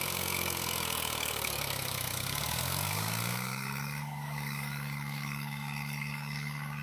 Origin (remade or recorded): remade